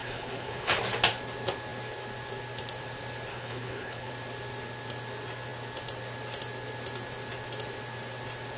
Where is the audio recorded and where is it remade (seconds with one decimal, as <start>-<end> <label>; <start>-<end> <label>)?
0.0-0.7 remade; 0.7-3.3 recorded; 3.3-4.1 remade; 4.1-8.6 recorded